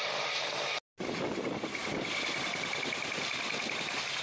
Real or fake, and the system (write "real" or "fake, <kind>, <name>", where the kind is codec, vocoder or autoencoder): real